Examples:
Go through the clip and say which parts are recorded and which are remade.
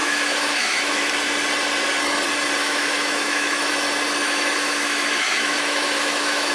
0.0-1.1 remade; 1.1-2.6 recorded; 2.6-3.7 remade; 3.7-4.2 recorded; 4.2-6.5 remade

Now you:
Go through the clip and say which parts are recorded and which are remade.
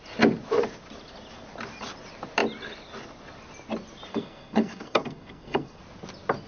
0.0-4.1 recorded; 4.1-5.8 remade; 5.8-6.5 recorded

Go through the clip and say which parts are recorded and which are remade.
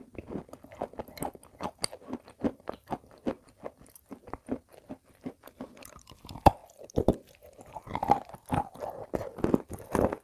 0.0-2.2 recorded; 2.2-6.6 remade; 6.6-8.3 recorded; 8.3-10.2 remade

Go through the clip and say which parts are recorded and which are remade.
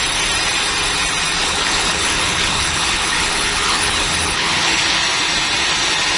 0.0-1.4 recorded; 1.4-4.8 remade; 4.8-6.2 recorded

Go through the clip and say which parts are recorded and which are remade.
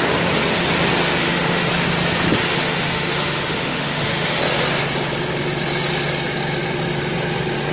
0.0-1.2 recorded; 1.2-1.7 remade; 1.7-2.4 recorded; 2.4-4.4 remade; 4.4-7.7 recorded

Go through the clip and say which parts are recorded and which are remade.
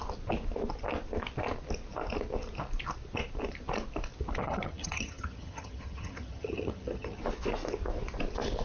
0.0-4.4 recorded; 4.4-7.2 remade; 7.2-8.6 recorded